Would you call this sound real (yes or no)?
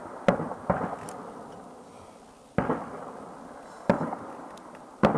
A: yes